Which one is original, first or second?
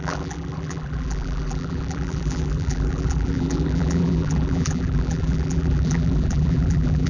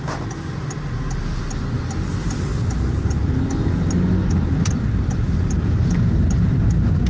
second